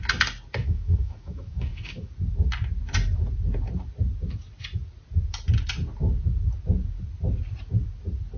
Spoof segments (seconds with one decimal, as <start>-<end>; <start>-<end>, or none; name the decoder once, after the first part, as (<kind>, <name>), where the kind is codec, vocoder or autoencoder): 0.6-2.1 (autoencoder, DAC-VAE)